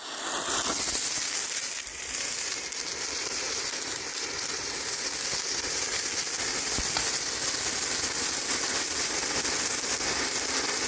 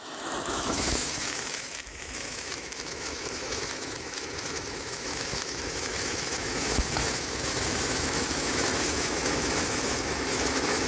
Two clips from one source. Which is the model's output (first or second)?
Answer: second